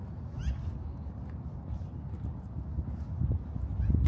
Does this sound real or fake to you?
real